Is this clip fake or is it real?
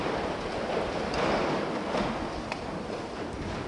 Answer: real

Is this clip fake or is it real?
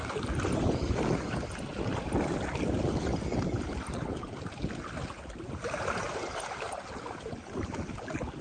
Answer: real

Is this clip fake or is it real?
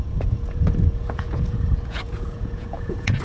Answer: fake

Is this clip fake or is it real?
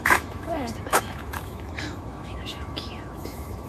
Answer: fake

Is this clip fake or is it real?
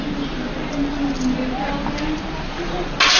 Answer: real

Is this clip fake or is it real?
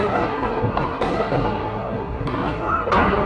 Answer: fake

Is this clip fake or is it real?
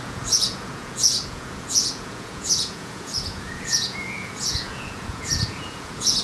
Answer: fake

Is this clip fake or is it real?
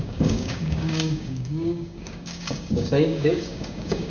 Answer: fake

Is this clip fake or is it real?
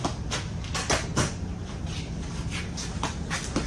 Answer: real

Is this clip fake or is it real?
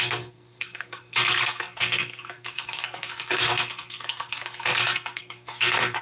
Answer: fake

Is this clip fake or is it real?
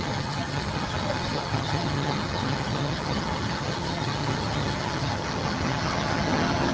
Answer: fake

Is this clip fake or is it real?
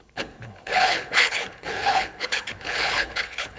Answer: fake